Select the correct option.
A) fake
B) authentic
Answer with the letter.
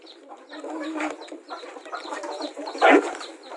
B